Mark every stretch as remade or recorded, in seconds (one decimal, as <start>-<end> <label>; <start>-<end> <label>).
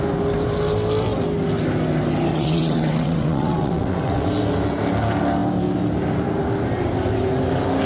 0.0-2.3 recorded; 2.3-4.3 remade; 4.3-7.9 recorded